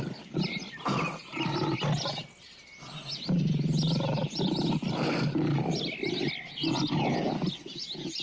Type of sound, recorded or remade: recorded